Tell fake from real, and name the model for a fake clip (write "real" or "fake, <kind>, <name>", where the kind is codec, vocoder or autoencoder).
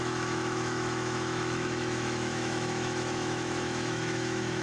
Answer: fake, autoencoder, DAC-VAE